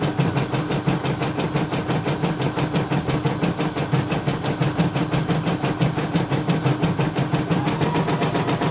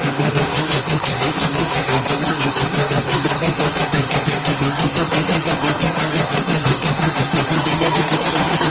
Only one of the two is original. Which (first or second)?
first